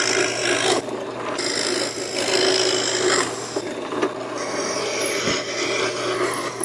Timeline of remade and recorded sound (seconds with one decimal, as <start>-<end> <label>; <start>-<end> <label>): 0.0-6.6 recorded